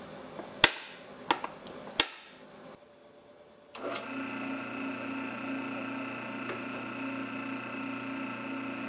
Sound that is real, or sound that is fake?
real